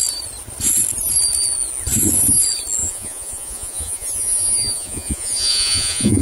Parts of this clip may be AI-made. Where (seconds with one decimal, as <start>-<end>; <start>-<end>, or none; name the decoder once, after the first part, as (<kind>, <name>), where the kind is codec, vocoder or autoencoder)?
2.8-6.2 (vocoder, Vocos)